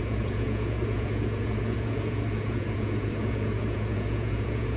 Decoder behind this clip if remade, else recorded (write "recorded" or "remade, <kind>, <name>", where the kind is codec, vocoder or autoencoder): remade, vocoder, Vocos